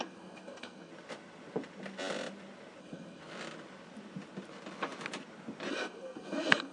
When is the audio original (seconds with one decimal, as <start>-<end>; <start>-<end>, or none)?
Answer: 0.9-2.8; 3.2-5.7